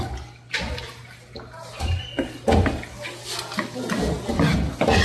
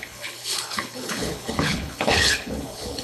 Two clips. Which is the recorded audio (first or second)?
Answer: first